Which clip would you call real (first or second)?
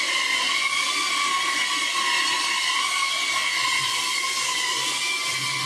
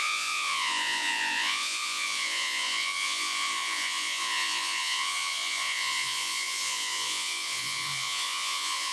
first